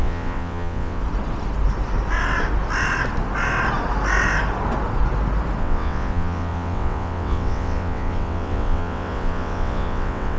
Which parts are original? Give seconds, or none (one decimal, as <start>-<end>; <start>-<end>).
1.0-5.6